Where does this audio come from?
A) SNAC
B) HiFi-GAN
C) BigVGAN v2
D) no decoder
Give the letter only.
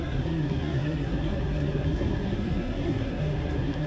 A